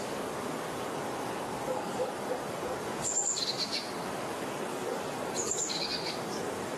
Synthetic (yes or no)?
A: yes